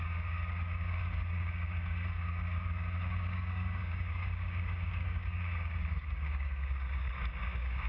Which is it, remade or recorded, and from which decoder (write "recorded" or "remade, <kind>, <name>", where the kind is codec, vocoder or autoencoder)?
remade, codec, DAC